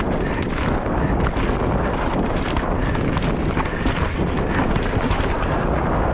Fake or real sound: real